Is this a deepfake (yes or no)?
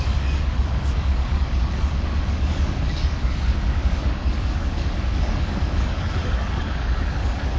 yes